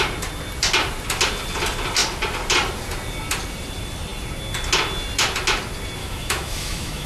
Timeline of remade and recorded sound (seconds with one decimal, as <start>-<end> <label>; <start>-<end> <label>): 0.0-6.0 recorded; 6.0-7.1 remade